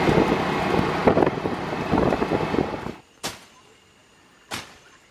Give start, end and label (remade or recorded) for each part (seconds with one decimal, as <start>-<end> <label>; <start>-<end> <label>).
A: 0.0-5.1 recorded